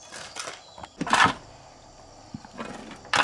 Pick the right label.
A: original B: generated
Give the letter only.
A